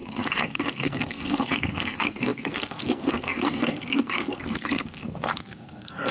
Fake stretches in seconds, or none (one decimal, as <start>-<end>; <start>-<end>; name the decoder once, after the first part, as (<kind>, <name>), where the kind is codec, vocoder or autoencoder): 0.0-6.1 (codec, SNAC)